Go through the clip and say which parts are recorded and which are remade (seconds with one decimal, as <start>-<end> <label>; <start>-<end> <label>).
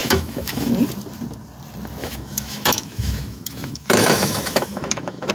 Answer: 0.0-0.7 remade; 0.7-2.0 recorded; 2.0-5.3 remade